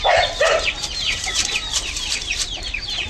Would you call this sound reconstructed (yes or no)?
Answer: yes